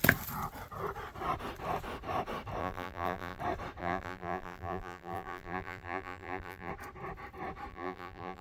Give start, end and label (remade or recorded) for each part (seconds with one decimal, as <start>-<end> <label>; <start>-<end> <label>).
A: 0.0-2.6 recorded; 2.6-3.4 remade; 3.4-3.8 recorded; 3.8-6.7 remade; 6.7-7.7 recorded; 7.7-8.4 remade